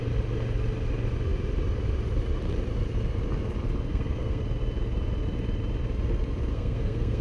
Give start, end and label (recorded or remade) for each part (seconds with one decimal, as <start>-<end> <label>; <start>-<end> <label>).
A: 0.0-3.9 recorded; 3.9-4.4 remade; 4.4-6.5 recorded; 6.5-7.2 remade

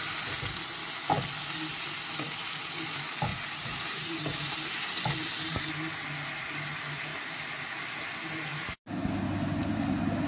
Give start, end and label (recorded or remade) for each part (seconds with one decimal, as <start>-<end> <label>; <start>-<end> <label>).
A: 0.0-3.3 recorded; 3.3-5.7 remade; 5.7-7.1 recorded; 7.1-8.9 remade; 8.9-10.3 recorded

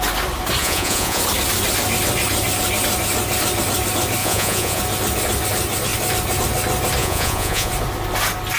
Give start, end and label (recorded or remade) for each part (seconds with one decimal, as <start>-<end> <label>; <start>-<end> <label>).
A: 0.0-0.6 recorded; 0.6-1.2 remade; 1.2-4.2 recorded; 4.2-4.8 remade; 4.8-7.0 recorded; 7.0-7.7 remade; 7.7-8.6 recorded

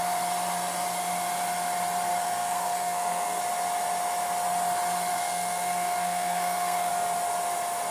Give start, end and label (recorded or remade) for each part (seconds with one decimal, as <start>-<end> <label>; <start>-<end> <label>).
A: 0.0-2.1 recorded; 2.1-3.4 remade; 3.4-5.1 recorded; 5.1-6.9 remade; 6.9-7.9 recorded

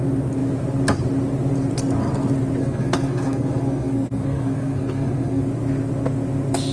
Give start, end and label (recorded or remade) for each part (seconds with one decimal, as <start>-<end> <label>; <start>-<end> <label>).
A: 0.0-2.6 recorded; 2.6-5.4 remade; 5.4-6.7 recorded